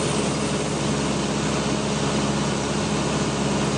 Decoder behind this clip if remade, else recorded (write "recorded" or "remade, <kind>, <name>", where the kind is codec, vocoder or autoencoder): recorded